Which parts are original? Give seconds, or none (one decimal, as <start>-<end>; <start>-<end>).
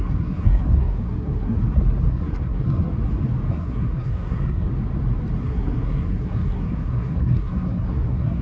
1.6-2.1; 2.9-3.5; 4.7-5.4